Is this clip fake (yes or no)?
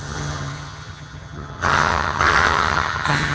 yes